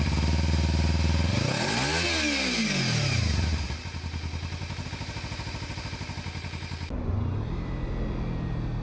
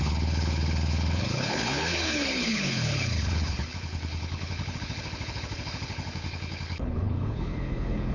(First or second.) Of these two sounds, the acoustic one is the first